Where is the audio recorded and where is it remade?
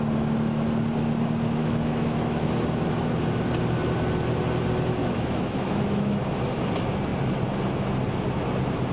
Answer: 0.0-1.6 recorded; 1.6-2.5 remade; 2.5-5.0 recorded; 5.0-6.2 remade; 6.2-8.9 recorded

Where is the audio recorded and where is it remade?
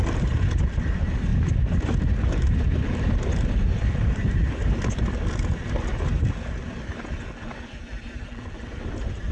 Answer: 0.0-9.3 recorded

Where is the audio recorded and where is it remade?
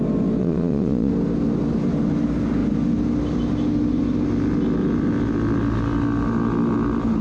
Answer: 0.0-0.4 recorded; 0.4-1.1 remade; 1.1-7.2 recorded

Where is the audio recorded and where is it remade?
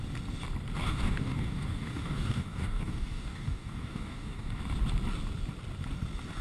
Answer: 0.0-0.8 recorded; 0.8-4.6 remade; 4.6-6.4 recorded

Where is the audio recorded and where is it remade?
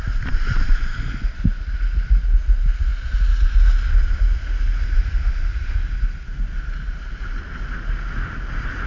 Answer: 0.0-8.9 recorded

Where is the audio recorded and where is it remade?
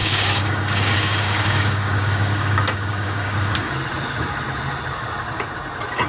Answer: 0.0-3.7 remade; 3.7-6.1 recorded